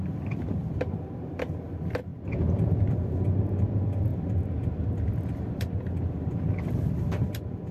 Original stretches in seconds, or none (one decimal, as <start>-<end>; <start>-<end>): 2.1-2.9; 4.1-5.1